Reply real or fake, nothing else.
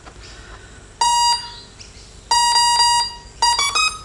real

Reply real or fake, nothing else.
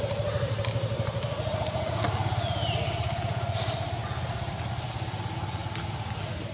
real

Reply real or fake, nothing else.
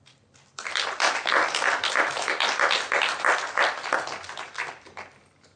fake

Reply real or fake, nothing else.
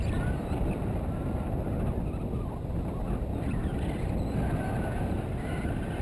real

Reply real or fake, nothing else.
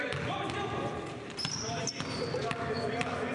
real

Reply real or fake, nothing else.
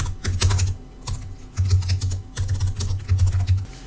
real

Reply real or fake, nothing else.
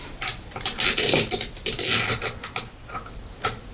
real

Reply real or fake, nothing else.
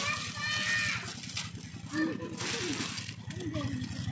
real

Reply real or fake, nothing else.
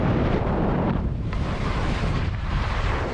fake